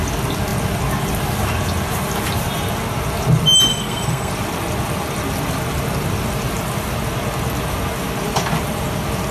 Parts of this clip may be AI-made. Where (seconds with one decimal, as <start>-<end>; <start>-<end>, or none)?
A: 3.7-4.3